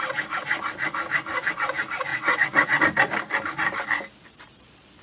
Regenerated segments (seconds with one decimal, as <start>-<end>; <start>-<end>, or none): 2.1-2.8

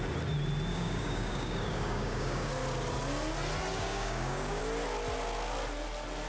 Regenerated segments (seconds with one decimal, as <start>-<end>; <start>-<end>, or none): 0.7-2.5; 3.7-4.6

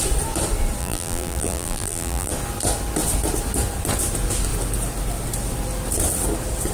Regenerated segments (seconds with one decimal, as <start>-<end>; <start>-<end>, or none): 0.8-2.3